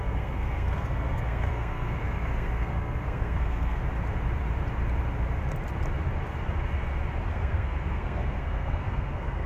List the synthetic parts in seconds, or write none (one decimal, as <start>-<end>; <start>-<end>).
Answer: 0.0-3.8; 7.3-9.5